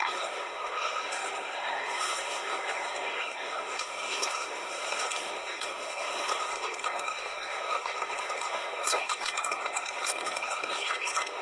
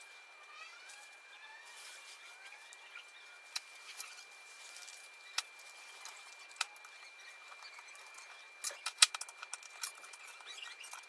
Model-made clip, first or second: first